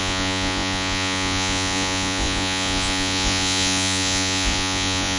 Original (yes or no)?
no